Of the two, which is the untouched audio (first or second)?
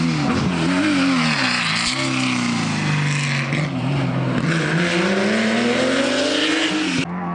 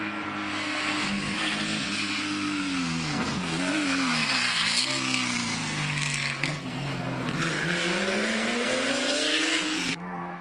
first